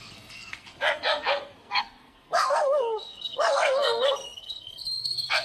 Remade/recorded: remade